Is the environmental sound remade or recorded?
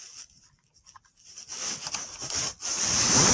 remade